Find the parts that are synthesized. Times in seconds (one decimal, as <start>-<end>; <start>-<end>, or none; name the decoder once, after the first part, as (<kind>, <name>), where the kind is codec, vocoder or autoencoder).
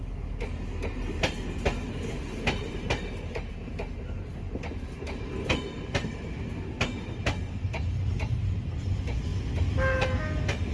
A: none